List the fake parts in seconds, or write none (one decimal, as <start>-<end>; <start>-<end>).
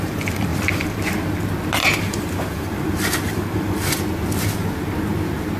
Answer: 0.5-1.0; 1.8-4.0